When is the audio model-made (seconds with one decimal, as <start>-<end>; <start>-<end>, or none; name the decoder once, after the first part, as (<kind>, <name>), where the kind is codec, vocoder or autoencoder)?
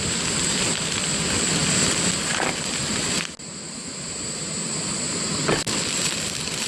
none